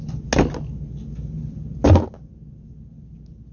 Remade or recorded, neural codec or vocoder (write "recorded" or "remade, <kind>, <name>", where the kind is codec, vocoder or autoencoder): recorded